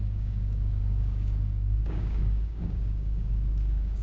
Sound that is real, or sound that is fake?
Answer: fake